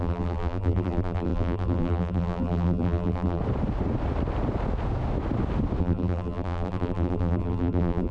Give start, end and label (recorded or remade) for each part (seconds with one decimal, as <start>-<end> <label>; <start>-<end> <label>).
0.0-3.4 remade; 3.4-5.8 recorded; 5.8-8.1 remade